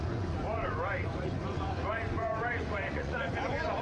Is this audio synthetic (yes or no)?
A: yes